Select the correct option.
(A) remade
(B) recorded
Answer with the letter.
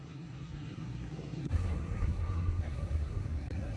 A